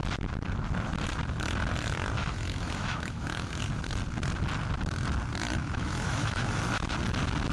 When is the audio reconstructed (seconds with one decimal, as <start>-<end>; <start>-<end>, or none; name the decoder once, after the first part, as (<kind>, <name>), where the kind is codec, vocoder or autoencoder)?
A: 2.2-3.6 (autoencoder, DAC-VAE); 5.6-6.6